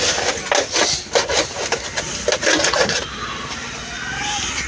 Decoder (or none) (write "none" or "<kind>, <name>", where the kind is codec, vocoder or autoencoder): none